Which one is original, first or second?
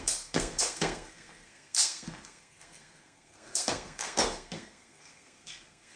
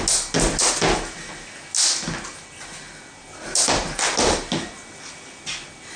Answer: second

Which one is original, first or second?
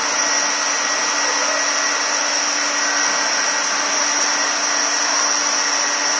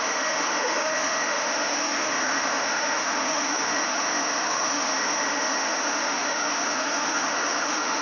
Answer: first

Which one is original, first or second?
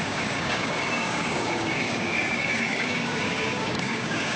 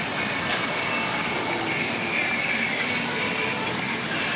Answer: second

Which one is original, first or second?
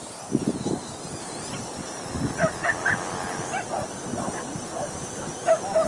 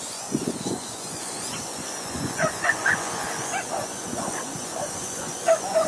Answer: first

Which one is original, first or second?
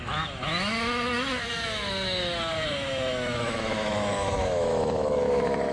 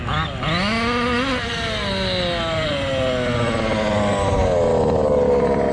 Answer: second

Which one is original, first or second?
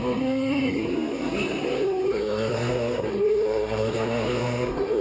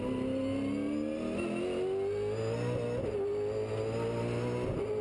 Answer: second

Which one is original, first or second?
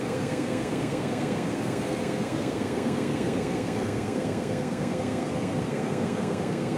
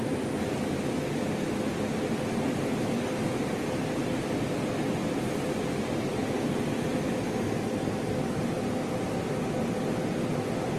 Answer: second